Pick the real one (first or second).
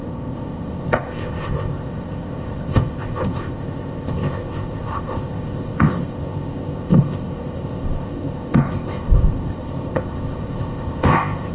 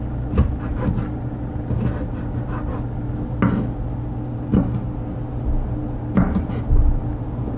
second